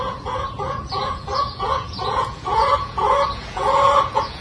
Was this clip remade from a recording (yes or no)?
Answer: yes